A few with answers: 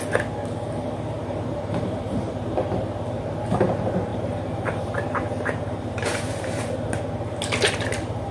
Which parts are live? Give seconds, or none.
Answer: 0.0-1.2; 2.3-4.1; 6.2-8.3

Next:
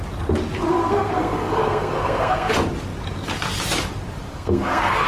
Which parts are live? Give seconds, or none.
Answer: 0.0-0.7; 2.5-4.3

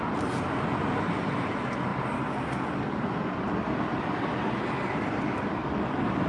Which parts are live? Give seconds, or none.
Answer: 0.0-6.3

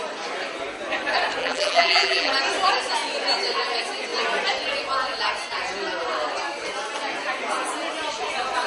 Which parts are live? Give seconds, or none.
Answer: 0.0-1.4; 2.3-8.7

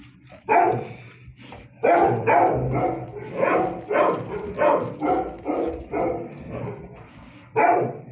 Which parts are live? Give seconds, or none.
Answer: 0.0-8.1

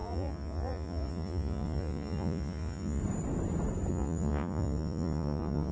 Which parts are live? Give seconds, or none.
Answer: 3.0-3.9

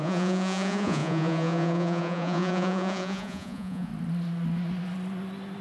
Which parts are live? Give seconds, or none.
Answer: 3.9-5.6

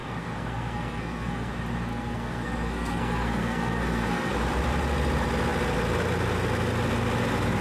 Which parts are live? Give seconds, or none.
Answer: 1.5-1.9; 4.3-7.6